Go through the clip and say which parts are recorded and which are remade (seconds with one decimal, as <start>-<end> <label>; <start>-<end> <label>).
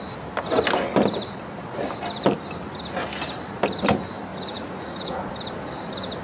0.0-4.3 recorded; 4.3-5.3 remade; 5.3-6.2 recorded